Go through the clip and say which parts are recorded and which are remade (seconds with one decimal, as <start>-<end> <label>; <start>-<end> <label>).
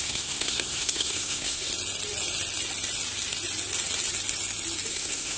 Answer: 0.0-1.7 remade; 1.7-4.9 recorded; 4.9-5.4 remade